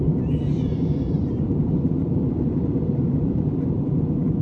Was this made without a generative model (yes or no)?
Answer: no